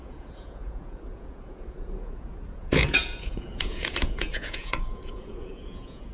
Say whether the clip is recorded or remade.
remade